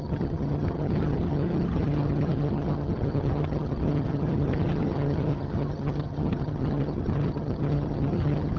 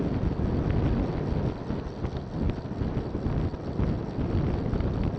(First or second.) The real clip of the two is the second